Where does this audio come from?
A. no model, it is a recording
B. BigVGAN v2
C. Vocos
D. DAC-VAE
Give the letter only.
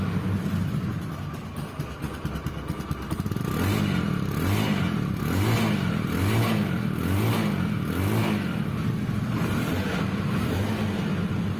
A